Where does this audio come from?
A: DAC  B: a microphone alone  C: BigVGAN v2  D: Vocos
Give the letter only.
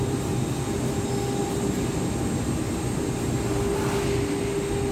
B